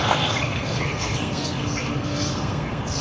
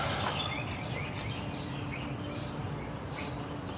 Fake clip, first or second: first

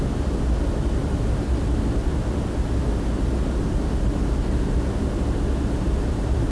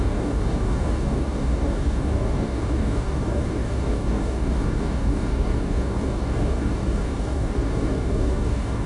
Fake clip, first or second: second